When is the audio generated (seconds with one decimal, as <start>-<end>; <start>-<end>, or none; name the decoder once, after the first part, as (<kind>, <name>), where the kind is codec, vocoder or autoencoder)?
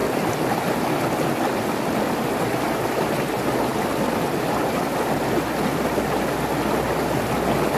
none